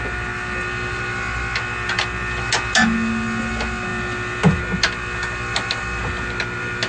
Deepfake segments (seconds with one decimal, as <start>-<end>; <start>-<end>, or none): none